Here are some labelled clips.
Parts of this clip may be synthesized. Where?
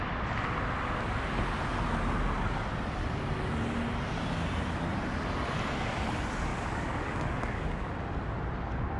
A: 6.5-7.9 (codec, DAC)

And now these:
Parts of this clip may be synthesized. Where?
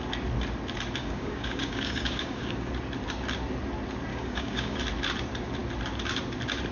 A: 1.0-2.7 (codec, DAC); 4.1-4.8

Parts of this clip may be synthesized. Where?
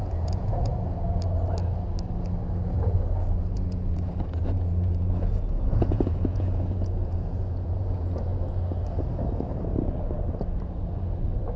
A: 0.0-0.7 (vocoder, Vocos); 3.4-8.3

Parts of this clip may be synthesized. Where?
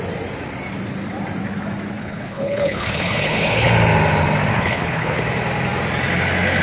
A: 2.0-3.7 (codec, HILCodec); 4.5-5.2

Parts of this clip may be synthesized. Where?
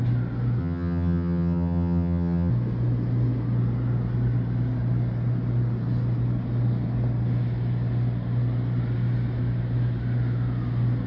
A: 0.6-2.5 (vocoder, HiFi-GAN)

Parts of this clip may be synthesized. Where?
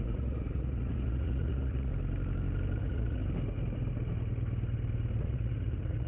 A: 0.0-1.9 (vocoder, Vocos); 2.8-3.2; 5.2-6.1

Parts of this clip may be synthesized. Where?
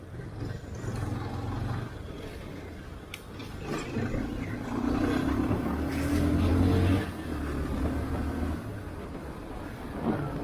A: none